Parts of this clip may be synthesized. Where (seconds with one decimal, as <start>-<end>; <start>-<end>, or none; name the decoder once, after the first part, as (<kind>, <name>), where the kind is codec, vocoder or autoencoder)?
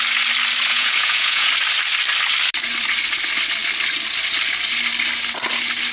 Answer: 0.7-1.5 (vocoder, Vocos)